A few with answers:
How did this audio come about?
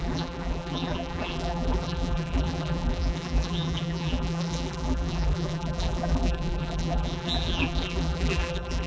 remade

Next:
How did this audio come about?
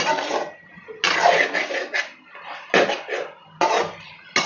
recorded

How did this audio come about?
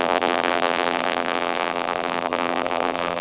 remade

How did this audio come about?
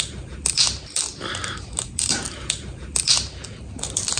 recorded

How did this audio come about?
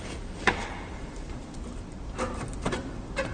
remade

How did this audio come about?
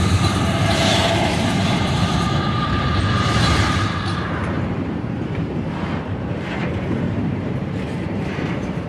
remade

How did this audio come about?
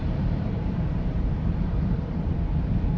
remade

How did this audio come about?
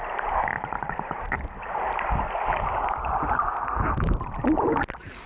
recorded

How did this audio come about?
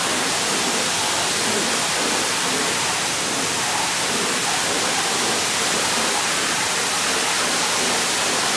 remade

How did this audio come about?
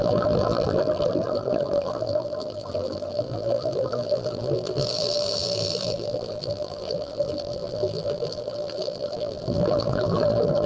remade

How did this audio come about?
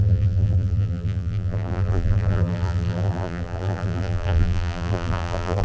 remade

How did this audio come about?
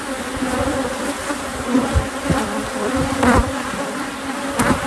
remade